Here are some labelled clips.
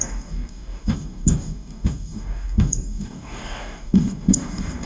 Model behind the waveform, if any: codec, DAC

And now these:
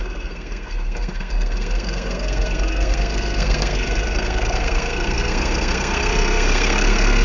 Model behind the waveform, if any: codec, SNAC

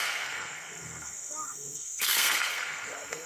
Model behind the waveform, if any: codec, SNAC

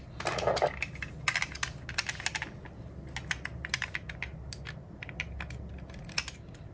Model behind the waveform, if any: none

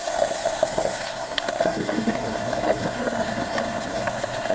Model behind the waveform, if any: codec, SNAC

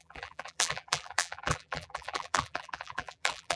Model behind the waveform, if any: vocoder, BigVGAN v2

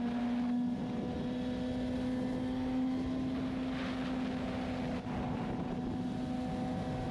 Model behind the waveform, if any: none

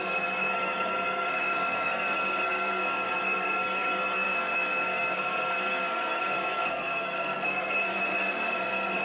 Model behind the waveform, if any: codec, SNAC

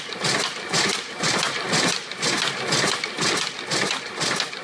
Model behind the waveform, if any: none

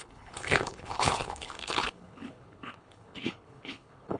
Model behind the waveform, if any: codec, HILCodec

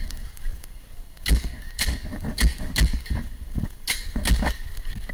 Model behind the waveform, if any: codec, DAC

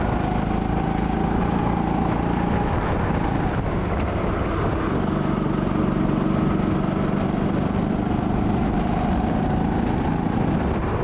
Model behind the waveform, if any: none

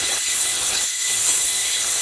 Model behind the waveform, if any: codec, HILCodec